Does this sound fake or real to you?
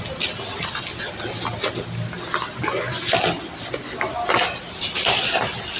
real